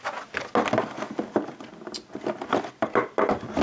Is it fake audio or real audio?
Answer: real